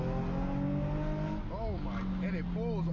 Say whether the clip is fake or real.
real